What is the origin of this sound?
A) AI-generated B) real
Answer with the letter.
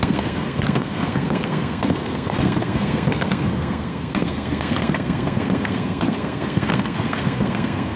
A